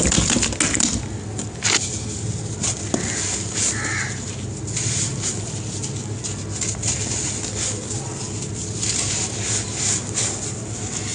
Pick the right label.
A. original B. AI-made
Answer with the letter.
A